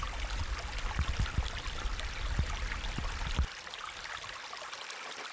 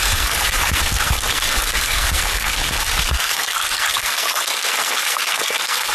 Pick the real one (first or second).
first